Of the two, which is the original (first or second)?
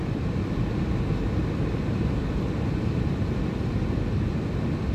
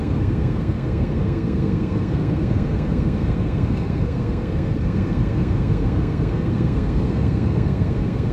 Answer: first